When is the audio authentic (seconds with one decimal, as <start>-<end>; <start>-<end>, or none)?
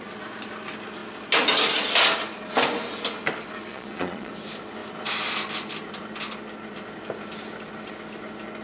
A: 0.0-3.7; 4.3-8.6